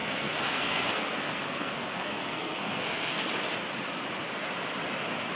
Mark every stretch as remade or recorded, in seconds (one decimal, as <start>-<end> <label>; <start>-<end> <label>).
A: 0.0-3.2 remade; 3.2-5.4 recorded